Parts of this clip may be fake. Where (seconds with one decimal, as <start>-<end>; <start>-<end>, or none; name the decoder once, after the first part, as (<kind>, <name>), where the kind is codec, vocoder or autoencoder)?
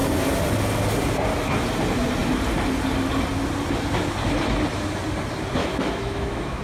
5.6-6.6 (autoencoder, DAC-VAE)